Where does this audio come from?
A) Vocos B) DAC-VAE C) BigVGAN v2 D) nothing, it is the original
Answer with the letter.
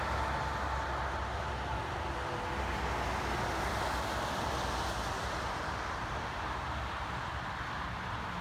D